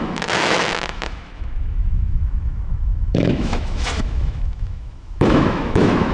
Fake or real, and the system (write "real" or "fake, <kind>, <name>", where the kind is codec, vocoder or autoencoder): fake, autoencoder, DAC-VAE